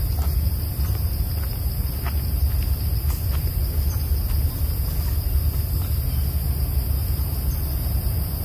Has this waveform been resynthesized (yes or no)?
no